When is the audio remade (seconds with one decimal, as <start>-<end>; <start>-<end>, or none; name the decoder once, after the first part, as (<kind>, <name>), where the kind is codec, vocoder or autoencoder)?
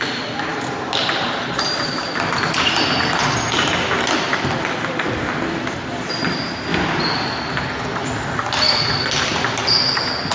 none